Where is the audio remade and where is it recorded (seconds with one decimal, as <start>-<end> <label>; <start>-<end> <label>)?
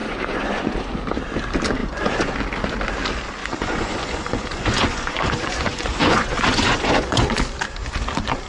0.0-0.7 remade; 0.7-1.8 recorded; 1.8-2.3 remade; 2.3-3.4 recorded; 3.4-7.4 remade; 7.4-8.5 recorded